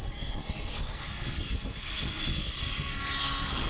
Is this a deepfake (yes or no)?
yes